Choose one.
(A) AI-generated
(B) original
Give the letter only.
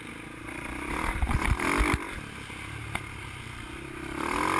B